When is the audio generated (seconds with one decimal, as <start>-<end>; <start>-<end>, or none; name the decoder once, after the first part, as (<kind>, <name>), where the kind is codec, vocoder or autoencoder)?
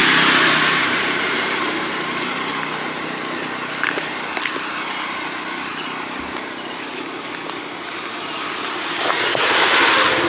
0.0-2.5 (vocoder, BigVGAN v2); 5.7-6.9